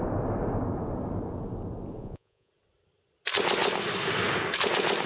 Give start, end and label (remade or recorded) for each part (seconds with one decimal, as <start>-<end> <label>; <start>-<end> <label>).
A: 0.0-2.0 recorded; 2.0-2.5 remade; 2.5-5.1 recorded